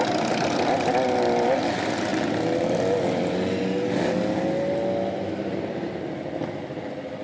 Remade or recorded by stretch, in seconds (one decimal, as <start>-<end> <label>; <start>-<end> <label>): 0.0-7.2 recorded